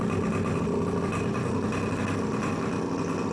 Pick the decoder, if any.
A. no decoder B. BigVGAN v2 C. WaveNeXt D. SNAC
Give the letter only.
A